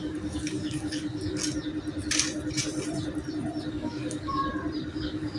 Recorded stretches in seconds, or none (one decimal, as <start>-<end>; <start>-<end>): 1.4-3.7; 4.4-4.9